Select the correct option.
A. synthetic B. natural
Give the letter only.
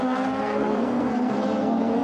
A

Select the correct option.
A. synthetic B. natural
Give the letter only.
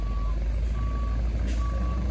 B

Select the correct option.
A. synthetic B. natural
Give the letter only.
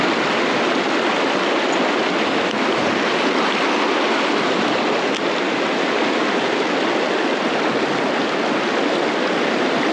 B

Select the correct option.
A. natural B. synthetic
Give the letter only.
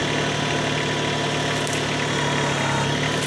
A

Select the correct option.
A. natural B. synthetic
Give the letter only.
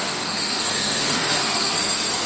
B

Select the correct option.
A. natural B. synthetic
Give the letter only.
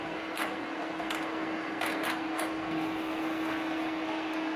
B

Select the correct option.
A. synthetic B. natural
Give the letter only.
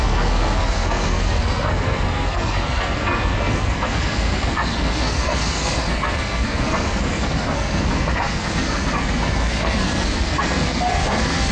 A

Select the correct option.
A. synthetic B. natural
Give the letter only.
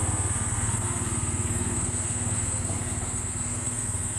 A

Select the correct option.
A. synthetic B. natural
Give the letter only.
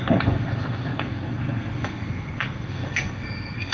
A